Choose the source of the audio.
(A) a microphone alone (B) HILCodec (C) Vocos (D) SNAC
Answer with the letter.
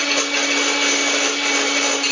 A